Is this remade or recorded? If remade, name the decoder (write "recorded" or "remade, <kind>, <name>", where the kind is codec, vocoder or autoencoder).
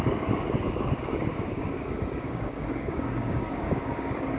remade, codec, DAC